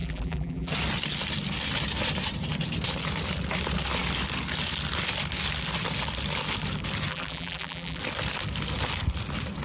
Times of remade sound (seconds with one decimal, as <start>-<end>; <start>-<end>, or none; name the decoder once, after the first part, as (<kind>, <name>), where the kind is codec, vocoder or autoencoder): 0.0-0.7 (vocoder, BigVGAN v2); 7.1-8.0